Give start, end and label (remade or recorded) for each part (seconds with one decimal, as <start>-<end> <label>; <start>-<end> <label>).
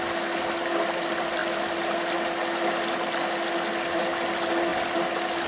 0.0-5.5 recorded